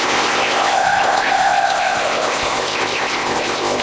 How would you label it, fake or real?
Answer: fake